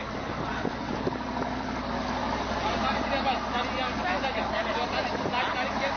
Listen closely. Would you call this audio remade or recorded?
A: recorded